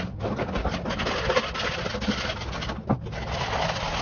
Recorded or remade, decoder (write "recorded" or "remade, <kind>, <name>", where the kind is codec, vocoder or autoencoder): recorded